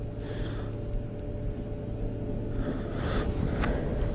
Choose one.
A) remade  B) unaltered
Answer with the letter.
B